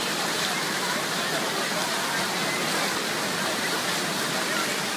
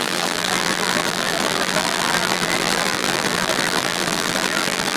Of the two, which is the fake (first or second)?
second